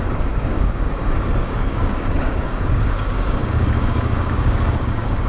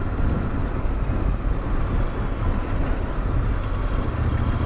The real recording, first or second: second